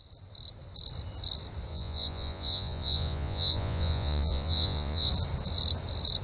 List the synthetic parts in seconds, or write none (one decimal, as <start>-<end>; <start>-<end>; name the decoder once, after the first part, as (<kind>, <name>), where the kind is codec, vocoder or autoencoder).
1.7-5.1 (vocoder, Vocos)